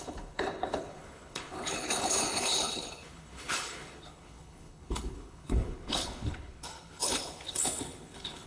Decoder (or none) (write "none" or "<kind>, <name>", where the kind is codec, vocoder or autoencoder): codec, HILCodec